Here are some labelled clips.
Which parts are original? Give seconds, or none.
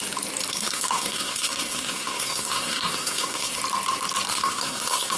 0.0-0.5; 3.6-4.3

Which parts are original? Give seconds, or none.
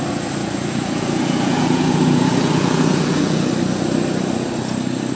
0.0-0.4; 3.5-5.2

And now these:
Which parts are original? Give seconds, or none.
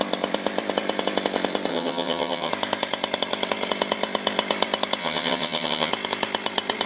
0.0-1.7; 2.5-5.0; 5.9-6.9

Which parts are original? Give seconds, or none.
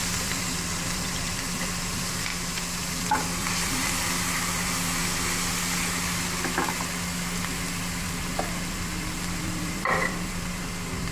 2.3-2.9; 5.0-8.0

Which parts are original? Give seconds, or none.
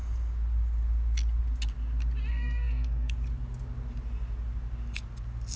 0.0-2.3; 3.1-5.6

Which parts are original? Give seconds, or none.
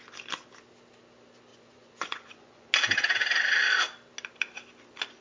0.0-1.5; 2.7-5.2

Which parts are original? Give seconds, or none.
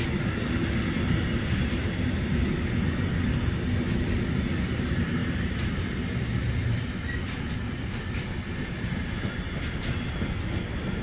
0.0-11.0